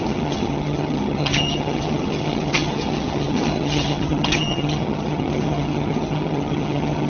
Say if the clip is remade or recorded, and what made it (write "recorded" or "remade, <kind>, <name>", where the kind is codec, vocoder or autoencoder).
remade, vocoder, HiFi-GAN